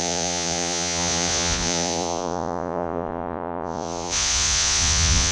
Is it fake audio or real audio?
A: fake